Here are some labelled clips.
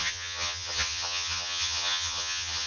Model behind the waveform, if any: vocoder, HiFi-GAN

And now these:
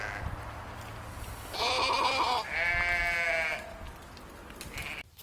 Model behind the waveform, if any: none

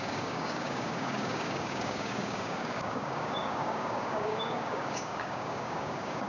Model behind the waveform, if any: codec, DAC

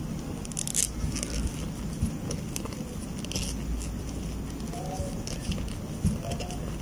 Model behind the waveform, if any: none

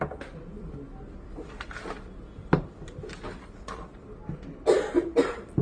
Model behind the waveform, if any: none